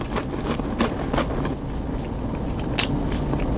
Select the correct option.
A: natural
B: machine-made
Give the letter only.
A